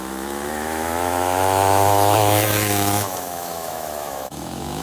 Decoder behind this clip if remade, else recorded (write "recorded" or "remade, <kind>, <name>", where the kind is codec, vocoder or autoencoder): remade, autoencoder, DAC-VAE